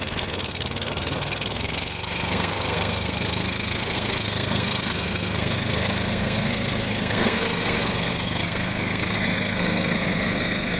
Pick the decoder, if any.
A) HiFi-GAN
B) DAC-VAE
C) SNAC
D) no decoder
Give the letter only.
C